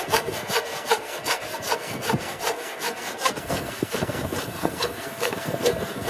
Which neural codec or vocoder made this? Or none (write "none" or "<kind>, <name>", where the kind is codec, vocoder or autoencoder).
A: codec, SNAC